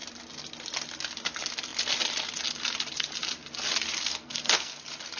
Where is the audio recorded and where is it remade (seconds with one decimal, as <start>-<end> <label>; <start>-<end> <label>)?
0.0-3.9 recorded; 3.9-4.8 remade; 4.8-5.2 recorded